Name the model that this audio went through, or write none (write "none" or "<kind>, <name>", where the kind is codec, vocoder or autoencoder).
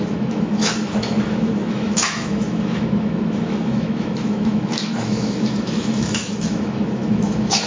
autoencoder, DAC-VAE